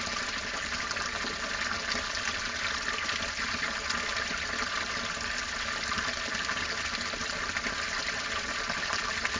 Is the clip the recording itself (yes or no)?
yes